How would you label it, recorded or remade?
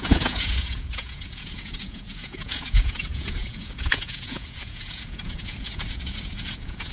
remade